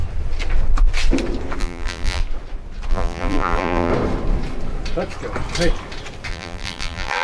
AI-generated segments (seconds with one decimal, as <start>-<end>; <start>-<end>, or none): 1.6-2.2; 2.9-3.9; 6.3-7.2